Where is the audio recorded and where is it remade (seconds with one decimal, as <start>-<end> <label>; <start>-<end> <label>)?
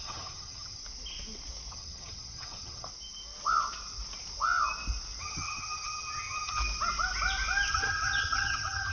0.0-0.8 remade; 0.8-1.7 recorded; 1.7-2.9 remade; 2.9-5.2 recorded; 5.2-6.6 remade; 6.6-7.7 recorded; 7.7-8.9 remade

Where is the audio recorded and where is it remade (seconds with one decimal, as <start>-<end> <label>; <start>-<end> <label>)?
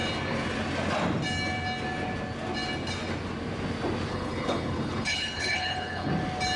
0.0-4.1 recorded; 4.1-6.1 remade; 6.1-6.6 recorded